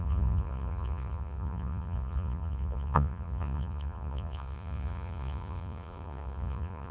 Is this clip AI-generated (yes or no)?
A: yes